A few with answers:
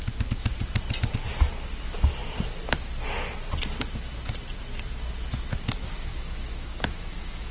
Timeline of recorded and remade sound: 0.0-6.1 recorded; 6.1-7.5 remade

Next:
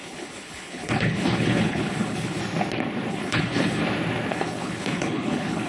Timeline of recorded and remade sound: 0.0-2.4 remade; 2.4-3.1 recorded; 3.1-3.8 remade; 3.8-4.3 recorded; 4.3-5.7 remade

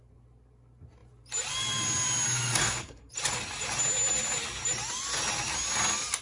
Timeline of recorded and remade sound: 0.0-2.6 recorded; 2.6-3.1 remade; 3.1-6.2 recorded

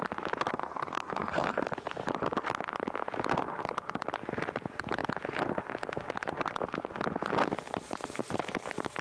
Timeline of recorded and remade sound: 0.0-0.6 recorded; 0.6-1.6 remade; 1.6-9.0 recorded